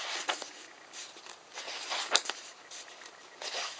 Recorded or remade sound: recorded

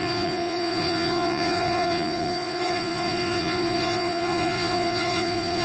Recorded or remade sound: remade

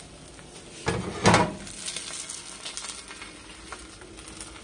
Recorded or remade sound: recorded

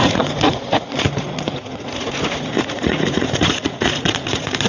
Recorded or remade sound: remade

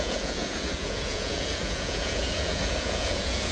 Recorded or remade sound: remade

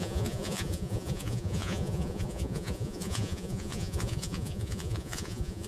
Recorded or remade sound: remade